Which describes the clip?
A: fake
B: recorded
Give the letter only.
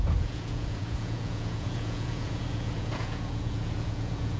A